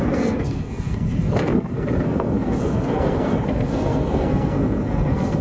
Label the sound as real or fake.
fake